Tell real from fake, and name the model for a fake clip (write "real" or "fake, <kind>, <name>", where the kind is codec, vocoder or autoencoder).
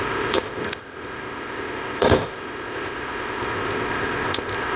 fake, codec, ZipCodec